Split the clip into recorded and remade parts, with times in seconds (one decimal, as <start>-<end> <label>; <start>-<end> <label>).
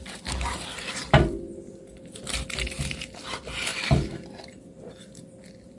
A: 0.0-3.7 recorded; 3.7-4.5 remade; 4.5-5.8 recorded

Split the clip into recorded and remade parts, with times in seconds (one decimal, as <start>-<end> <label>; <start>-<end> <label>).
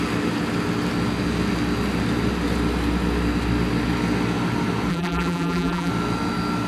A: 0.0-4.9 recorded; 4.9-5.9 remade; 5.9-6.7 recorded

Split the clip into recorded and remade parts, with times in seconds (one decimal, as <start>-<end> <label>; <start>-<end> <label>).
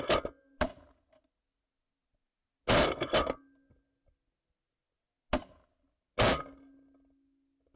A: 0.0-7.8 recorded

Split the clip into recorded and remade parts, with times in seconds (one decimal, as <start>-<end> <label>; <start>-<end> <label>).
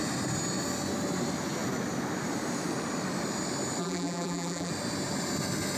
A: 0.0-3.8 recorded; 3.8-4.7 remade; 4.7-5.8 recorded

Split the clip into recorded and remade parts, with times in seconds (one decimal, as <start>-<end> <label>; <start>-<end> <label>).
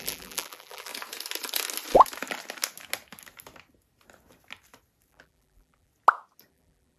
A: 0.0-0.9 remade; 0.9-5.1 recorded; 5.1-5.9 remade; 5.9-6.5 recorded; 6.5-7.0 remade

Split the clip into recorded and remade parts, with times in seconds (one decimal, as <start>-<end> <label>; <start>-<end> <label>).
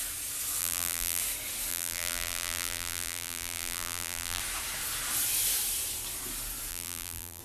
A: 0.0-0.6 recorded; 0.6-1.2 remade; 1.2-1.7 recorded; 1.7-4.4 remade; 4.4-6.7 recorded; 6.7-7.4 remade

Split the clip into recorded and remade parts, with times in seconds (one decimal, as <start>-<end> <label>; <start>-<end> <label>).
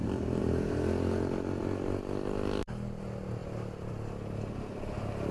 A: 0.0-5.3 recorded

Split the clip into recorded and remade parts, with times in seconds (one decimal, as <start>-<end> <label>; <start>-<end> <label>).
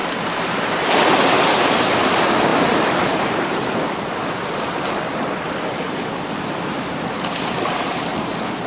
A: 0.0-0.9 remade; 0.9-2.5 recorded; 2.5-7.4 remade; 7.4-8.7 recorded